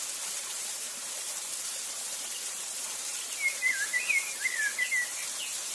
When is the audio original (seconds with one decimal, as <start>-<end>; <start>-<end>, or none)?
0.0-0.4; 1.0-5.7